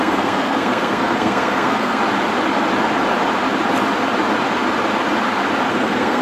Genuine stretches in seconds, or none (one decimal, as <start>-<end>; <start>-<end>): 2.0-5.7